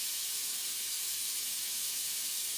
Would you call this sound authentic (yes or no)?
no